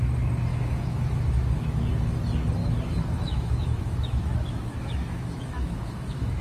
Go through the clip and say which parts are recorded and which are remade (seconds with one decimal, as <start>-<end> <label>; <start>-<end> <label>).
0.0-0.5 recorded; 0.5-1.9 remade; 1.9-2.6 recorded; 2.6-6.4 remade